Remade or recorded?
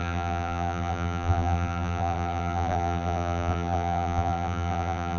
remade